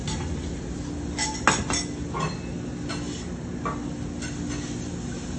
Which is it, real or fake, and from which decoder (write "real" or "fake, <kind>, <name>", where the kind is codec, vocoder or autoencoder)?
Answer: real